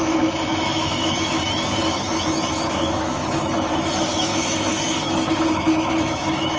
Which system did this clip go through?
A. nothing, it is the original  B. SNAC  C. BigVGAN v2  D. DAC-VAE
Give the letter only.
D